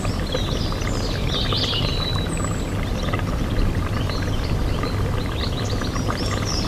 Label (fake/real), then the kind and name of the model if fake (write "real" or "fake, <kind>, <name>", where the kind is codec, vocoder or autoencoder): real